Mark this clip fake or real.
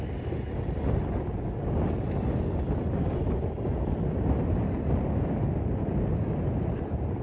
real